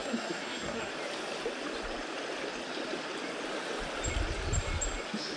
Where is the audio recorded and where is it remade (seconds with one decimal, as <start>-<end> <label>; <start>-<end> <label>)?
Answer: 0.0-0.9 remade; 0.9-5.4 recorded